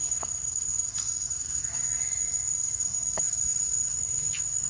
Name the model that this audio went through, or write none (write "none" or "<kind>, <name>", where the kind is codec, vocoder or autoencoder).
codec, SNAC